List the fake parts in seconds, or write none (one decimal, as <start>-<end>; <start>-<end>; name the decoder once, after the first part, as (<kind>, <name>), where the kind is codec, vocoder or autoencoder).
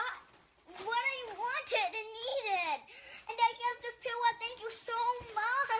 none